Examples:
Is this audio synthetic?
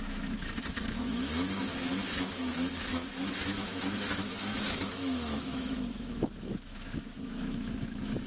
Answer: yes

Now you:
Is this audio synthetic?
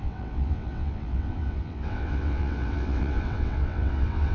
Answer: yes